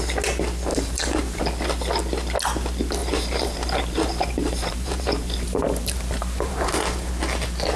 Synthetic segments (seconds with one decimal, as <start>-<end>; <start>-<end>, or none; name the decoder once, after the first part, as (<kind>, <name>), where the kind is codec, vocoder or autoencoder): 0.7-1.4 (vocoder, BigVGAN v2); 3.0-7.1